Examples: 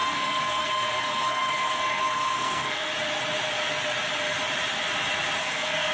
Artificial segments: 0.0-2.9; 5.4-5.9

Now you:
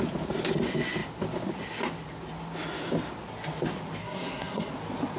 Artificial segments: 4.0-4.7

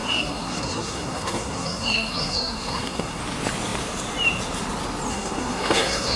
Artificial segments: 0.0-3.2; 5.1-6.2

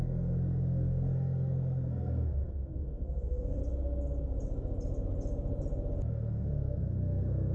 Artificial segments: 0.0-3.6; 6.1-7.5

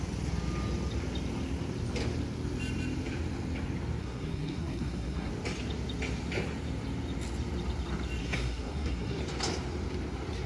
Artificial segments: 4.0-5.3; 8.2-9.2

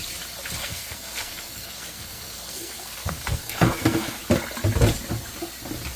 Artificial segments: 0.6-4.2